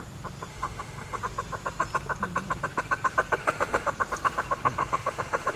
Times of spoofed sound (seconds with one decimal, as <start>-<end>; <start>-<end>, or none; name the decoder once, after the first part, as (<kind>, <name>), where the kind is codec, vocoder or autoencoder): 0.5-1.2 (autoencoder, DAC-VAE); 3.4-3.9; 4.8-5.6